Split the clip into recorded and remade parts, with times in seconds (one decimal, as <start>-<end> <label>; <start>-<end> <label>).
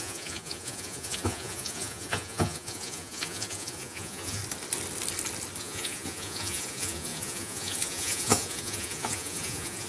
0.0-4.4 remade; 4.4-5.6 recorded; 5.6-9.9 remade